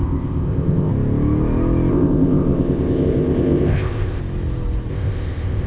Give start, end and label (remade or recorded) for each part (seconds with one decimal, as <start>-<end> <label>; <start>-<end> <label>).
0.0-0.9 remade; 0.9-1.9 recorded; 1.9-4.2 remade; 4.2-4.9 recorded; 4.9-5.7 remade